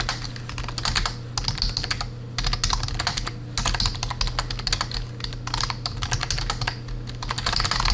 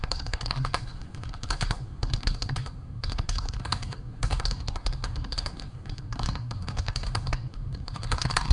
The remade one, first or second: second